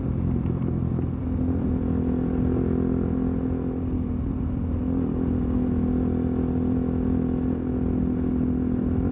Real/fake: real